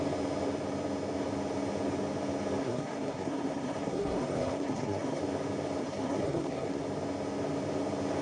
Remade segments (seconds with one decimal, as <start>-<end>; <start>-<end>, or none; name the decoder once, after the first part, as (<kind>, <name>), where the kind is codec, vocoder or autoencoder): 2.6-5.2 (codec, SNAC); 5.8-6.8

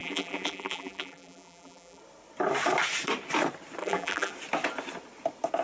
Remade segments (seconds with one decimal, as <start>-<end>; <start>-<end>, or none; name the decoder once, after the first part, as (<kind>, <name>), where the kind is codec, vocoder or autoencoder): 0.0-2.0 (vocoder, BigVGAN v2); 3.8-4.3

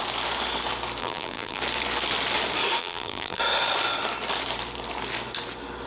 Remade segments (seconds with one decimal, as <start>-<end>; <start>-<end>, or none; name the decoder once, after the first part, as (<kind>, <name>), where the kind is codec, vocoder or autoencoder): 1.0-1.6 (vocoder, BigVGAN v2); 2.8-3.4

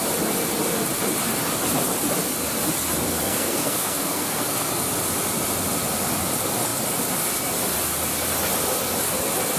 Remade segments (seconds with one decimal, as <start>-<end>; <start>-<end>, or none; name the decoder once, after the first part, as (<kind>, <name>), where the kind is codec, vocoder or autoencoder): 3.1-4.7 (codec, SNAC)

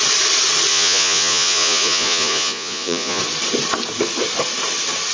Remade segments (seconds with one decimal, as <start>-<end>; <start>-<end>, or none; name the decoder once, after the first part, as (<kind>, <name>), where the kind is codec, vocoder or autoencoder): 0.7-3.2 (vocoder, Vocos)

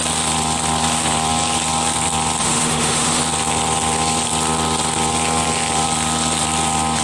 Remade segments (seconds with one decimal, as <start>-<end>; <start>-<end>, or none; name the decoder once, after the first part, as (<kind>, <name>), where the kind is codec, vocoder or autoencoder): 2.4-3.2 (autoencoder, DAC-VAE)

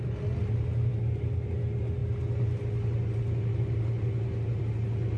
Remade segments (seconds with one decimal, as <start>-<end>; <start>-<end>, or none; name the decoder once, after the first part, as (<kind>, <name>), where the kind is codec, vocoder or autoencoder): none